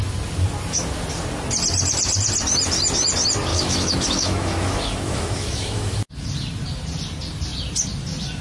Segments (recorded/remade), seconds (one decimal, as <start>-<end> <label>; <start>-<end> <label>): 0.0-3.5 recorded; 3.5-6.0 remade; 6.0-8.4 recorded